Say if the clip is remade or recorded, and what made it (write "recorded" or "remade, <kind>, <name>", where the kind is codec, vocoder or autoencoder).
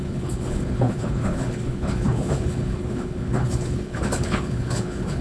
remade, codec, HILCodec